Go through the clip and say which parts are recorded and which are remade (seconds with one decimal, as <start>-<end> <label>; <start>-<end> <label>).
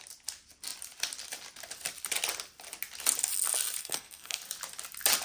0.0-3.8 recorded; 3.8-4.4 remade; 4.4-5.2 recorded